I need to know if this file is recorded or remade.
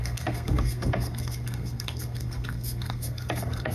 remade